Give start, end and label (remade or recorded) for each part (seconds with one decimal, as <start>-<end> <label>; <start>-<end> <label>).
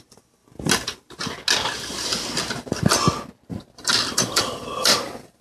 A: 0.0-0.4 remade; 0.4-3.6 recorded; 3.6-5.4 remade